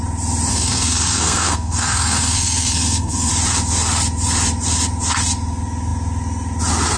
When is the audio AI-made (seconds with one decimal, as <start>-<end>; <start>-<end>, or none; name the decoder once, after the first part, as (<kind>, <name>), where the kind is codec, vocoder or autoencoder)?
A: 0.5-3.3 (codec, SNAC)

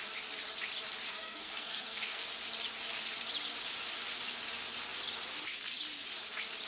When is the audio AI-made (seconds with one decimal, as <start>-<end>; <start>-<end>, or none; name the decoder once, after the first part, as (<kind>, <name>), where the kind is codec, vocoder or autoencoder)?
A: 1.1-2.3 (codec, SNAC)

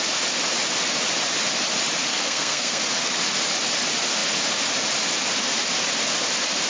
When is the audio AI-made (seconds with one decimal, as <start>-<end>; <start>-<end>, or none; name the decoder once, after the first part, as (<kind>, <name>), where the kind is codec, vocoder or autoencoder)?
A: 2.1-2.8 (codec, SNAC)

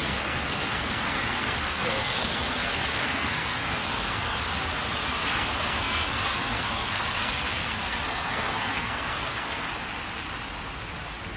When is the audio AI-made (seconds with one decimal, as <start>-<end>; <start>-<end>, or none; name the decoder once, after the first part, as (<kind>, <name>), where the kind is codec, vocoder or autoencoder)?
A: 0.0-4.4 (codec, SNAC); 5.2-9.6

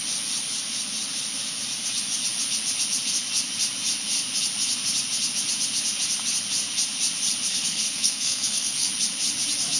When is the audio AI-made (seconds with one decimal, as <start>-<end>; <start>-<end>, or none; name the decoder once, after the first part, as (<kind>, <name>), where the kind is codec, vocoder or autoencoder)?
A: 7.5-8.9 (codec, SNAC)